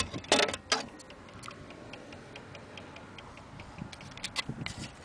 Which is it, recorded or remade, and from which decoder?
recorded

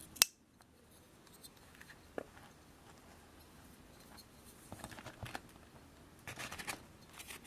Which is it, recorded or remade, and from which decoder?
recorded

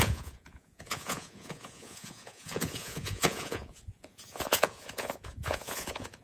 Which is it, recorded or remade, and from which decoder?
remade, vocoder, Vocos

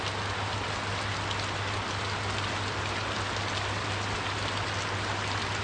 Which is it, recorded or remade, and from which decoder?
recorded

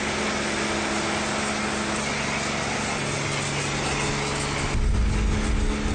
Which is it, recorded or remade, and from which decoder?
recorded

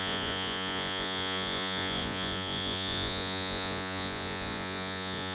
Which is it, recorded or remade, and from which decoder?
remade, vocoder, Vocos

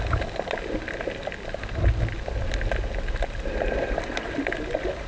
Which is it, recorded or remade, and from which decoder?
recorded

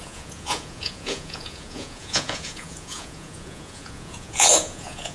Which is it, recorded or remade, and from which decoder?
remade, vocoder, Vocos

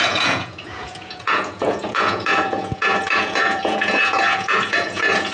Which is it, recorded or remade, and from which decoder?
remade, vocoder, Vocos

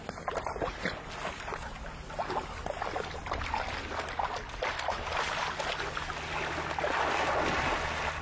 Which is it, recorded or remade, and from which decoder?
recorded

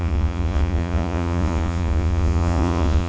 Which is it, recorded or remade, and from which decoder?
remade, vocoder, Vocos